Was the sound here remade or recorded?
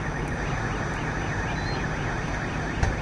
recorded